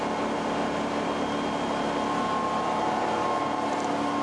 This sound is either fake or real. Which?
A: real